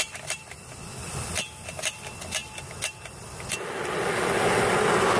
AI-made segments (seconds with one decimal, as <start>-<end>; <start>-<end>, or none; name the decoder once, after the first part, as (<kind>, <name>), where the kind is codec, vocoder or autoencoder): none